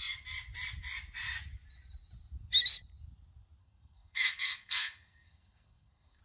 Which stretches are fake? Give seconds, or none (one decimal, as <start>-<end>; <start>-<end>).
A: 3.6-6.2